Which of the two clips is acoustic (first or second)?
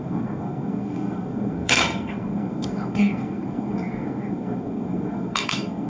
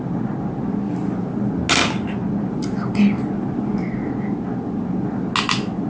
second